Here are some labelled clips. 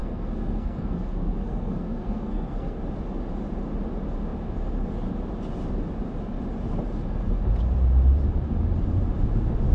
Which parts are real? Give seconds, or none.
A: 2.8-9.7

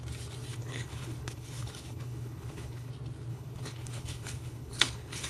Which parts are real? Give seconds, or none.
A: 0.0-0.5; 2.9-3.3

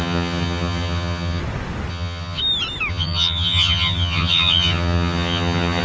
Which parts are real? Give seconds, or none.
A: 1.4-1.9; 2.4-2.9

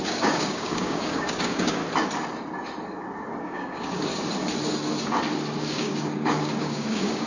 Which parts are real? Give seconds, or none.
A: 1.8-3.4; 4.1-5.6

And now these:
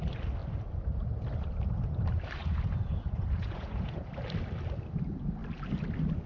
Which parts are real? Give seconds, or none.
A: 0.0-2.4; 4.1-6.3